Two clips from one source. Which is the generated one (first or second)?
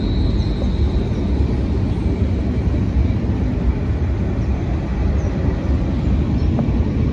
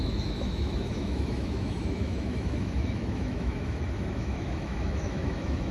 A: second